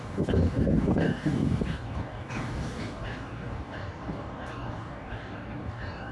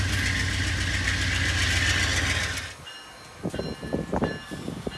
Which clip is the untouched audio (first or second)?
second